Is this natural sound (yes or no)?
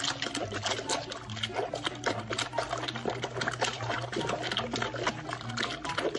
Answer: yes